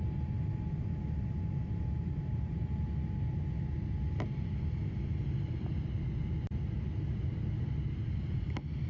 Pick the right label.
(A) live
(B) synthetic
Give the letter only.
A